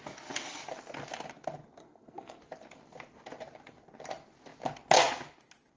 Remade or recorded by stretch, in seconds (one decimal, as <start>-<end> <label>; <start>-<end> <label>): 0.0-1.8 recorded; 1.8-2.4 remade; 2.4-5.8 recorded